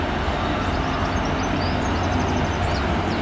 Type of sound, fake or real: real